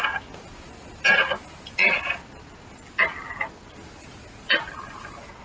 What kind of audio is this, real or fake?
real